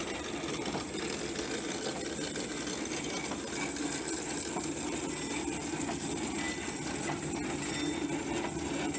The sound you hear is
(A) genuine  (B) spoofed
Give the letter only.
A